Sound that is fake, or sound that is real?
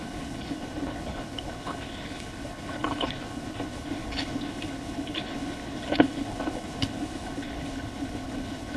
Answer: fake